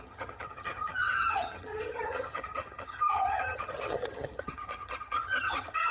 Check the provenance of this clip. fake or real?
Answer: fake